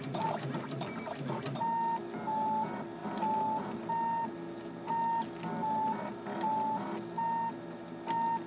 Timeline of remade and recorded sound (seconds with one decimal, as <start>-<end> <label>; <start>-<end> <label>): 0.0-8.5 recorded